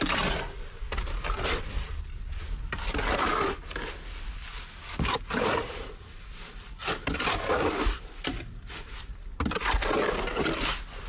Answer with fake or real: real